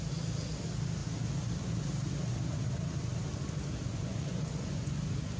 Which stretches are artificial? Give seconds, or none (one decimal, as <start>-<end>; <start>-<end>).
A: 3.9-5.0